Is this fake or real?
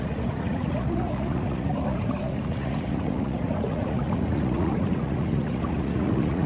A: fake